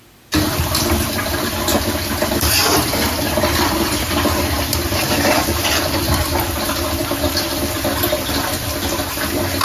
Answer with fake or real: fake